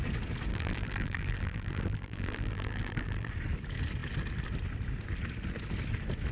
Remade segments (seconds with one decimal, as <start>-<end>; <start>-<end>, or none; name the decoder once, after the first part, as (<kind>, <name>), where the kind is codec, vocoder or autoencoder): 0.5-3.3 (vocoder, BigVGAN v2)